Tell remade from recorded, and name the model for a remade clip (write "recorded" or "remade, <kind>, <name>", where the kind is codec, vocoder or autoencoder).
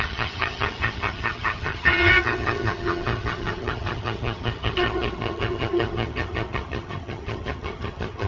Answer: remade, vocoder, HiFi-GAN